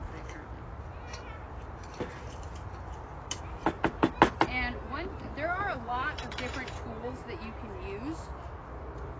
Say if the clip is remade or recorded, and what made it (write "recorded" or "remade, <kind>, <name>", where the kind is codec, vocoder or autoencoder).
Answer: recorded